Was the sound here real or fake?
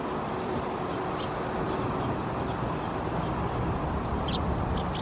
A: real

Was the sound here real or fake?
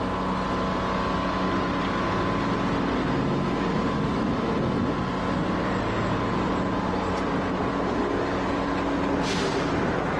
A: real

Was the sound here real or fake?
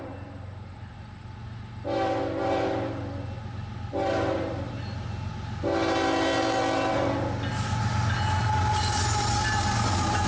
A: real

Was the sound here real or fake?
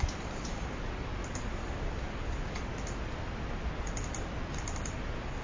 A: real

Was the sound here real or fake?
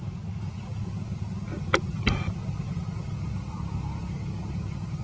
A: real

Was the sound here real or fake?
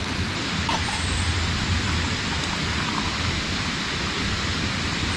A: real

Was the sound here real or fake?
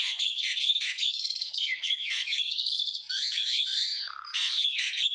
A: fake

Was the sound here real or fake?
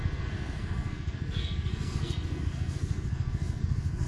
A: fake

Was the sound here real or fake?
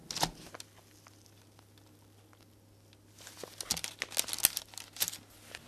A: real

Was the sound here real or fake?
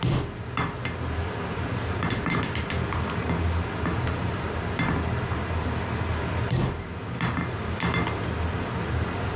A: real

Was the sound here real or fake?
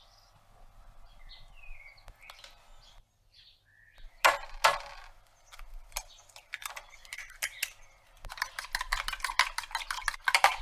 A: real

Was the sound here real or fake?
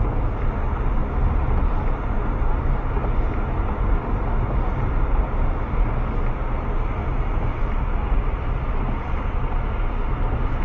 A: real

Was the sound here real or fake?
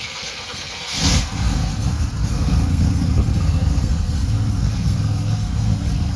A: fake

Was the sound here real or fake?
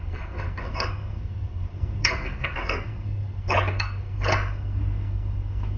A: fake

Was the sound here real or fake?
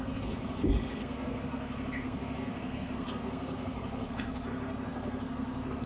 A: fake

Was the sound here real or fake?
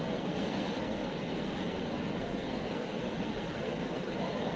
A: fake